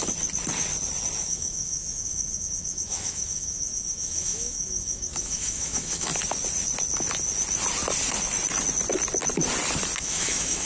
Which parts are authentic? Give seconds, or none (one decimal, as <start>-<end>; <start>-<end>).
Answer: 0.0-1.2; 6.1-10.0